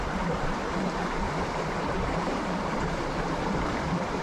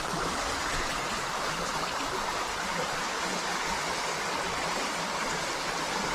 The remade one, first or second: first